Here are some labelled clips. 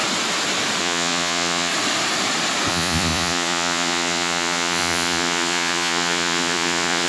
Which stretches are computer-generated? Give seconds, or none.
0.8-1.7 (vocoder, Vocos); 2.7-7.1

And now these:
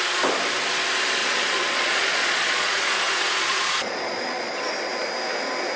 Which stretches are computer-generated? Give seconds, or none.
1.2-4.7 (vocoder, Vocos)

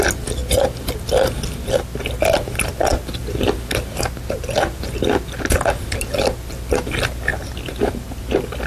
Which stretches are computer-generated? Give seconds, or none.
none